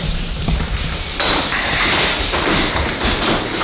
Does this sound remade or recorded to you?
remade